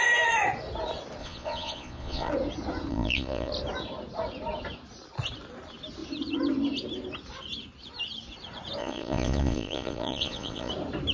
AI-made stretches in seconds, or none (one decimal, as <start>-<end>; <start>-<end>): 1.2-2.3; 2.9-3.5; 8.8-10.7